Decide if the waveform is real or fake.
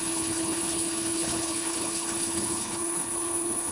fake